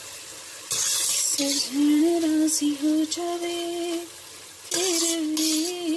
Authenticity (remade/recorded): recorded